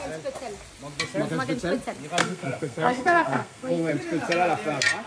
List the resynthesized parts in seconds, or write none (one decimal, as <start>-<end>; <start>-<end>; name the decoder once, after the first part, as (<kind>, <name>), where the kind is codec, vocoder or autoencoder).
2.2-3.9 (codec, SNAC)